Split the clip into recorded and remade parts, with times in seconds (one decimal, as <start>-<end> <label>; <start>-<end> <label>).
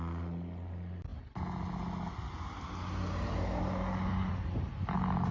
0.0-5.3 recorded